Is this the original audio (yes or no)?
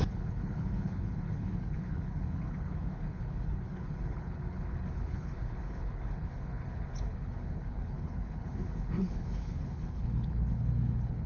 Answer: no